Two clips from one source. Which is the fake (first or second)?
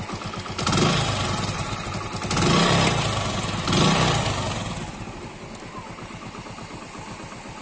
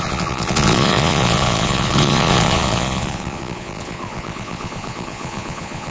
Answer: second